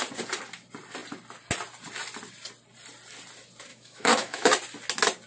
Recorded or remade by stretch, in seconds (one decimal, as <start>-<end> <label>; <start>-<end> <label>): 0.0-3.7 recorded; 3.7-4.5 remade; 4.5-5.3 recorded